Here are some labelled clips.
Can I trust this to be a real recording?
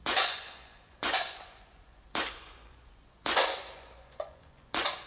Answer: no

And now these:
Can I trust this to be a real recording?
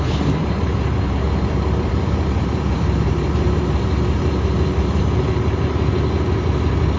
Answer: no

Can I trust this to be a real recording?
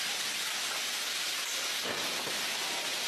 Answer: yes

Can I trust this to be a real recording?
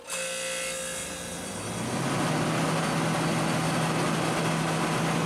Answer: yes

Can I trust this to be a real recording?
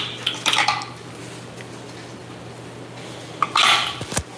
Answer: yes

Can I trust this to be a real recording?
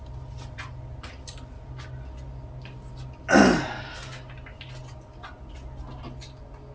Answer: yes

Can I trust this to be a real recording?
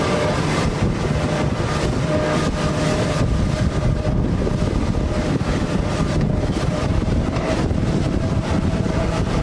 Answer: no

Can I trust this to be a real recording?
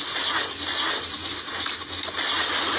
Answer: yes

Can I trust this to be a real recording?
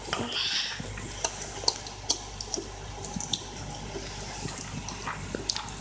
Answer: yes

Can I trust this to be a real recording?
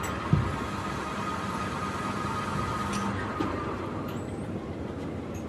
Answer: yes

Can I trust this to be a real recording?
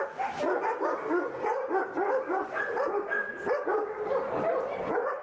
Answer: yes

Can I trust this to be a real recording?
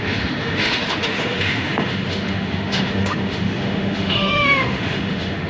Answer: no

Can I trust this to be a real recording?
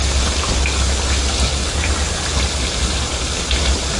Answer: yes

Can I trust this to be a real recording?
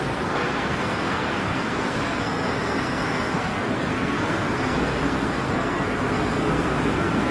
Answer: no